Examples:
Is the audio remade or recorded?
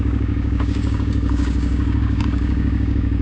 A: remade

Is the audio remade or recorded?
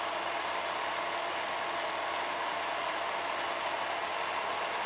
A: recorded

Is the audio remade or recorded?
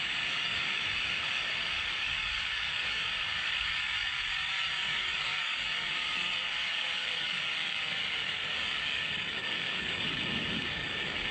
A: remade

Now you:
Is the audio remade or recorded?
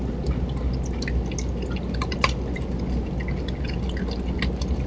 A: recorded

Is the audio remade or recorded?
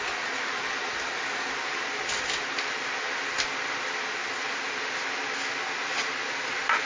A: recorded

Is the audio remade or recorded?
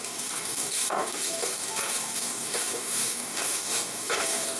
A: remade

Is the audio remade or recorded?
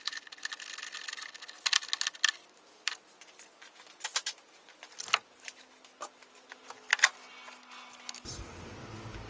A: recorded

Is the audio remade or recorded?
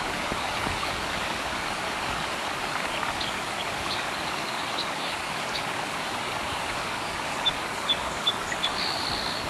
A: remade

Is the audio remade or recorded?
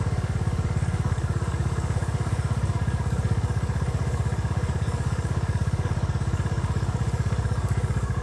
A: remade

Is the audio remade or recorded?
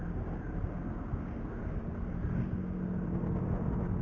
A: recorded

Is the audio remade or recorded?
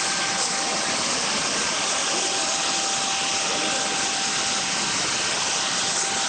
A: recorded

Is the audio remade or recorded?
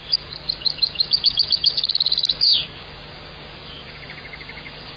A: remade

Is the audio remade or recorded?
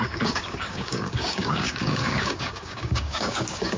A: remade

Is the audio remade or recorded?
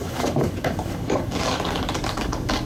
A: remade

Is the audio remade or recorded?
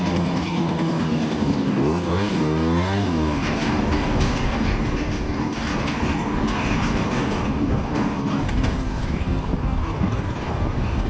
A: remade